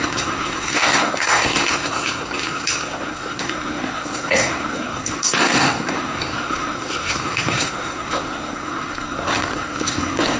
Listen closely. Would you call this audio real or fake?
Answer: fake